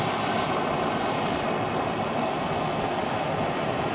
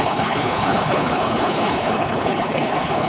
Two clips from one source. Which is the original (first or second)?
first